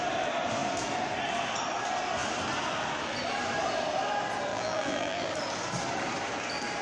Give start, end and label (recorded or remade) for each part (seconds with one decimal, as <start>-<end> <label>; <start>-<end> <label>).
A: 0.0-4.5 recorded; 4.5-5.3 remade; 5.3-6.8 recorded